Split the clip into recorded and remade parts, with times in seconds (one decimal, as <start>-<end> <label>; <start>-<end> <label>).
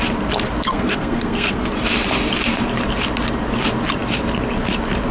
0.0-0.7 recorded; 0.7-1.7 remade; 1.7-5.1 recorded